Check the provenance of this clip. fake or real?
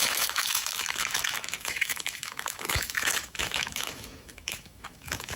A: fake